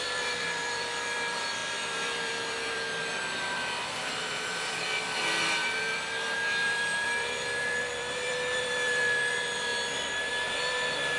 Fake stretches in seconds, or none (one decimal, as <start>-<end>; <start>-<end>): 0.0-9.7; 10.3-11.2